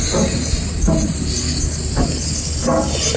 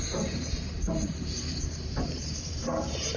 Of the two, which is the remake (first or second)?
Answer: second